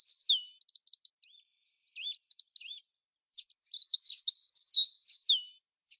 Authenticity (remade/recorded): recorded